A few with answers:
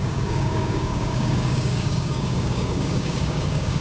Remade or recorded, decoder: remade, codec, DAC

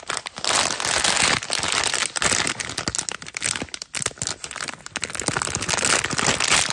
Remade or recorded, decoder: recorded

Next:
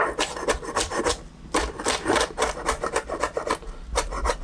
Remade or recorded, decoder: recorded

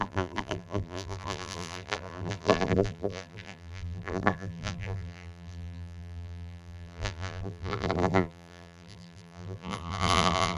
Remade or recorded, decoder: remade, vocoder, BigVGAN v2